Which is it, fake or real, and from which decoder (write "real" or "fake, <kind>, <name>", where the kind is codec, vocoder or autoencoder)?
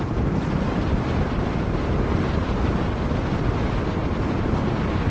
real